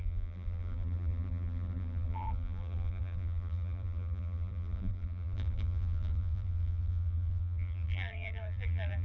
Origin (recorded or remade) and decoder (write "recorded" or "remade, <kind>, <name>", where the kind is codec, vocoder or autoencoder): remade, vocoder, BigVGAN v2